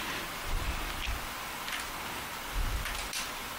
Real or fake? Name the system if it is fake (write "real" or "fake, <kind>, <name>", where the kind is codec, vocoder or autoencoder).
real